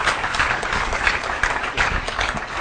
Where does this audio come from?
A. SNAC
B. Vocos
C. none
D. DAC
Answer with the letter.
D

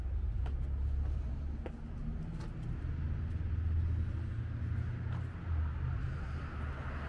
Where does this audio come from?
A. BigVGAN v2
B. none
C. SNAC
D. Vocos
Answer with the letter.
B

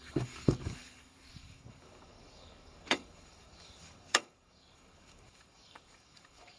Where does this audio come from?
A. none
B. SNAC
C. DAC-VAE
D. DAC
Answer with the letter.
D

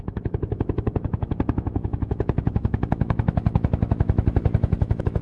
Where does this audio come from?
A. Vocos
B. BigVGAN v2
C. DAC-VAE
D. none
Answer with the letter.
C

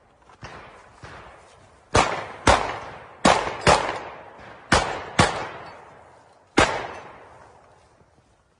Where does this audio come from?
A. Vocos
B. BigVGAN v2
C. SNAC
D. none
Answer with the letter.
D